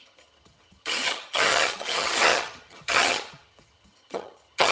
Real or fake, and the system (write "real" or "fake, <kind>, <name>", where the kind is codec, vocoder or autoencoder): fake, vocoder, HiFi-GAN